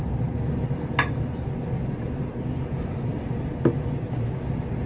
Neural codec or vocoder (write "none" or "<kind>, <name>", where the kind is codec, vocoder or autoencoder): none